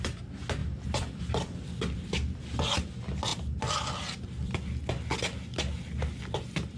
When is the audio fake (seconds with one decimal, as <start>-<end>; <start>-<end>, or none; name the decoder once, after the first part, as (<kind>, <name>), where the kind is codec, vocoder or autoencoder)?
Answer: 0.6-2.6 (vocoder, BigVGAN v2); 3.3-4.5